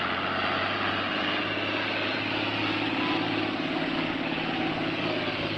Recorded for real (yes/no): yes